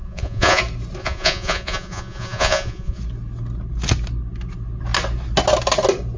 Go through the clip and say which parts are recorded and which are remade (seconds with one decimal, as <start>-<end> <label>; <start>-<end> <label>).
0.0-0.6 remade; 0.6-1.0 recorded; 1.0-3.0 remade; 3.0-6.2 recorded